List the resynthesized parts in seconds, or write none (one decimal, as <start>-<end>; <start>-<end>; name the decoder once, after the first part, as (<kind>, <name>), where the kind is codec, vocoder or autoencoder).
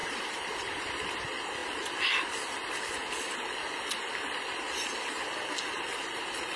0.0-0.8 (vocoder, BigVGAN v2)